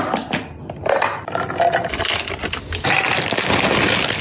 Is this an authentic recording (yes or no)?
yes